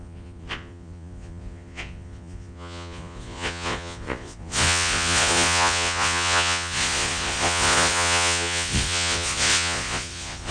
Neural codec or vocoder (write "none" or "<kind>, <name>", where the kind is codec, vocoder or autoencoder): vocoder, Vocos